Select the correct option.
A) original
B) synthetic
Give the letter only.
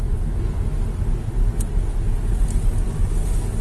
A